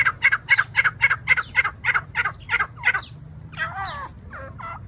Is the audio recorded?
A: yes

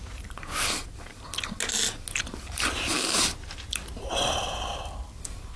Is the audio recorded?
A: yes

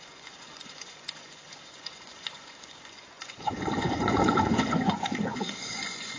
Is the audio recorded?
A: no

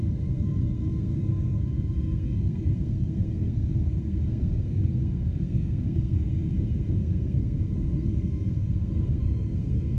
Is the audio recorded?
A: no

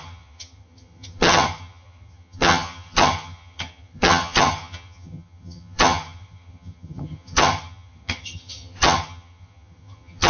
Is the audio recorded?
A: no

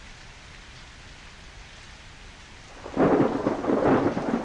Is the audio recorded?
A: yes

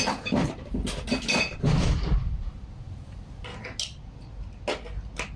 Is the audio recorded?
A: yes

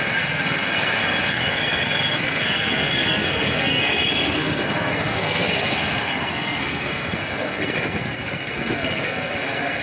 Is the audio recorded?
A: no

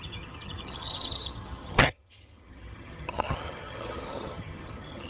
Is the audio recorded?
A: no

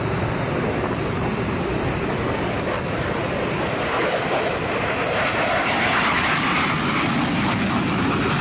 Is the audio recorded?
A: yes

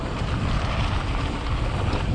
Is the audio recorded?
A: yes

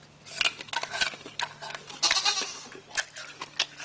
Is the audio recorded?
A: yes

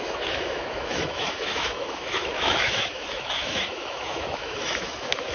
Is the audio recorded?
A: no